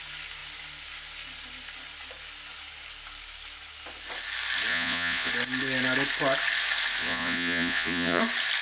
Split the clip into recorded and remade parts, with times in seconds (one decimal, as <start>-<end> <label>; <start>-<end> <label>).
0.0-4.7 recorded; 4.7-5.3 remade; 5.3-7.0 recorded; 7.0-8.2 remade; 8.2-8.6 recorded